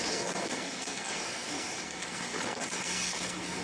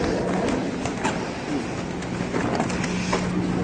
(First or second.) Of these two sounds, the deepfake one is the first